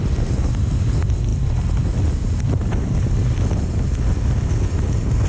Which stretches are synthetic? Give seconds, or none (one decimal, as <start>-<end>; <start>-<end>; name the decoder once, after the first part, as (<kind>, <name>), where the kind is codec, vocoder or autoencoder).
none